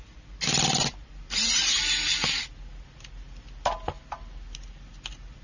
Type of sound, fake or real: real